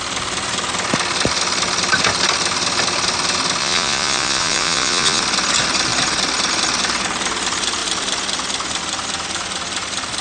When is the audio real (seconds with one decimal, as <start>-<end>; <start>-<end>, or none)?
0.0-3.6; 5.2-10.2